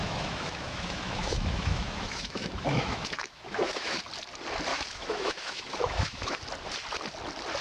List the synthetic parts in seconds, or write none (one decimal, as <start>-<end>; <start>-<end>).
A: 0.0-4.0; 4.7-6.4